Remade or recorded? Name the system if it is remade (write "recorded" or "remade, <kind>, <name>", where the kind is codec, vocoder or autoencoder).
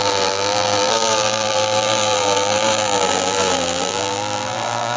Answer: remade, vocoder, BigVGAN v2